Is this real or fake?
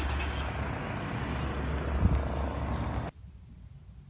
real